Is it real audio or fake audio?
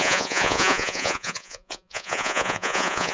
fake